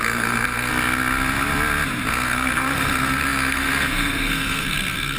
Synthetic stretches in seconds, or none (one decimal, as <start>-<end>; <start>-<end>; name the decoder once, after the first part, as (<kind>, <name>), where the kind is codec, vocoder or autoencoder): 0.0-0.7 (codec, SNAC); 2.1-5.2